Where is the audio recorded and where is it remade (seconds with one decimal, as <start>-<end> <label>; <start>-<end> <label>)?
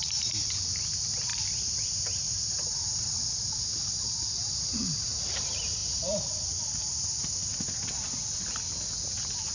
0.0-7.4 remade; 7.4-9.5 recorded